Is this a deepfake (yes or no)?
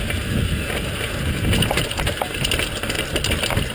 no